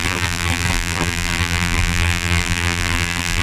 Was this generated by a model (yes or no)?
yes